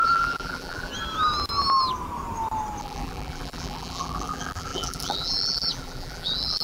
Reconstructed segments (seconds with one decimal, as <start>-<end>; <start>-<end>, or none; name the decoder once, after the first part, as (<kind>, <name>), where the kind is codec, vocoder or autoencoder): 0.0-0.9 (vocoder, BigVGAN v2); 2.8-6.6